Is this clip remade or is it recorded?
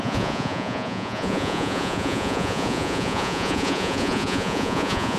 remade